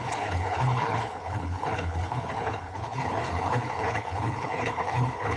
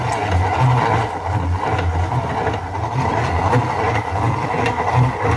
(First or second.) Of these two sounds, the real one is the second